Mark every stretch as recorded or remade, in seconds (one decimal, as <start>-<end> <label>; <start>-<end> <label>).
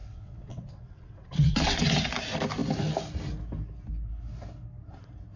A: 0.0-2.1 remade; 2.1-5.4 recorded